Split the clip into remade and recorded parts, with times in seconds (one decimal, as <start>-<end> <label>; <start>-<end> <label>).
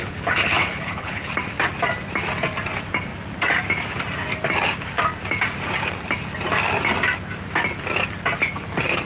0.0-1.3 remade; 1.3-9.0 recorded